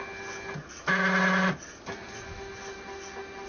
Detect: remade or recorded recorded